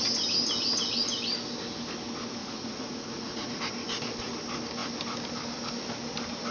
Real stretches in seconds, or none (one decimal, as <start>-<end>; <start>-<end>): 0.0-2.4; 3.6-6.5